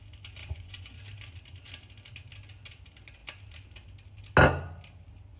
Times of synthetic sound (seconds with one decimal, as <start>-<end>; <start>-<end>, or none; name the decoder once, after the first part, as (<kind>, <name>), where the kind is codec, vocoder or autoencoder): 0.4-1.0 (vocoder, Vocos)

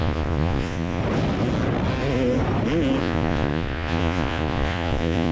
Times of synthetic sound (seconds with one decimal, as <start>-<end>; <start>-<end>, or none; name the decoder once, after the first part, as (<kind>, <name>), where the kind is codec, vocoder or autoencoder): 0.0-1.0 (vocoder, Vocos); 3.0-5.3

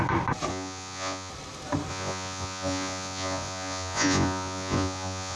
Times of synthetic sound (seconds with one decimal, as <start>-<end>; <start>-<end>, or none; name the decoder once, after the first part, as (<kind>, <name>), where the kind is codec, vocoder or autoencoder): 0.5-1.3 (vocoder, Vocos); 1.9-5.4

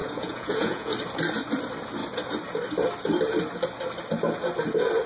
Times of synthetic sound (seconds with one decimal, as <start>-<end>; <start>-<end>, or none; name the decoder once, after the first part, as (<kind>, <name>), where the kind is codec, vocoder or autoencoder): 0.0-0.9 (vocoder, Vocos)

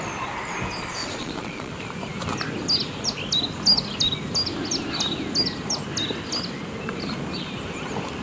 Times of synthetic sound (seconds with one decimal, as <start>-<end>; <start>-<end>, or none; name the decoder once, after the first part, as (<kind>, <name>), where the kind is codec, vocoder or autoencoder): 1.0-1.7 (vocoder, Vocos)

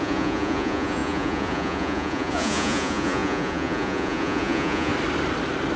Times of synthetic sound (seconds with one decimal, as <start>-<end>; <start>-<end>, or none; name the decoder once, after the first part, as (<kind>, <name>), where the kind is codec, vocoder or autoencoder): 0.0-4.9 (vocoder, Vocos)

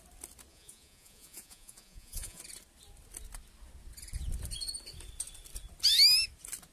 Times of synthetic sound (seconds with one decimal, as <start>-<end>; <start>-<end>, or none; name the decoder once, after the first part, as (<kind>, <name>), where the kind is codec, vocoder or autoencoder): 0.5-2.4 (vocoder, Vocos)

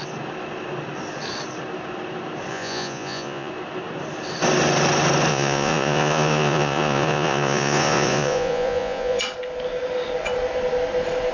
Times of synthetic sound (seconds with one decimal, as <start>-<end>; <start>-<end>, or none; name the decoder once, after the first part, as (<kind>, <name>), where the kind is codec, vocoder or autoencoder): 2.5-3.5 (vocoder, Vocos); 5.3-9.2